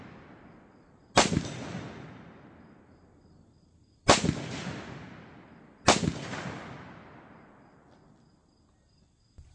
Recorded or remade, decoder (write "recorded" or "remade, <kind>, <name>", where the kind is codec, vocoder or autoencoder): recorded